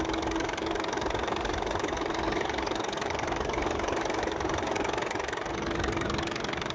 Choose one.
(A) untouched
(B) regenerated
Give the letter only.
B